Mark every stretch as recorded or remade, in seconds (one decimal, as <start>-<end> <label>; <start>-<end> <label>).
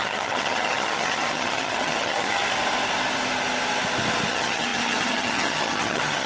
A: 0.0-2.4 remade; 2.4-4.3 recorded; 4.3-6.3 remade